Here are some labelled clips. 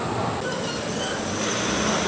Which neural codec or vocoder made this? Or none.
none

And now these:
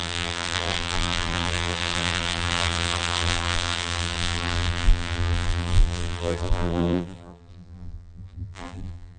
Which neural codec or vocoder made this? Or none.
vocoder, BigVGAN v2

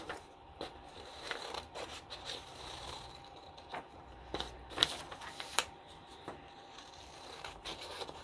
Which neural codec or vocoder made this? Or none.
vocoder, BigVGAN v2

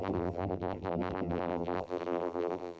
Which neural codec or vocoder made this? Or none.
vocoder, BigVGAN v2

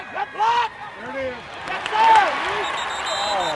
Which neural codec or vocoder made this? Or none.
none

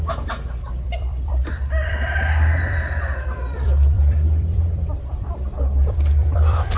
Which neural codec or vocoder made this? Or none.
vocoder, BigVGAN v2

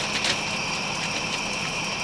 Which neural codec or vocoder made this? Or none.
none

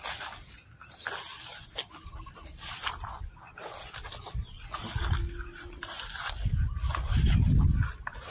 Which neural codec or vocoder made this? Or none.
none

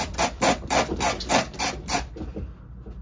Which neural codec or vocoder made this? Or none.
none